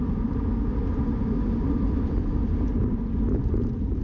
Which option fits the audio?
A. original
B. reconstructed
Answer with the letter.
A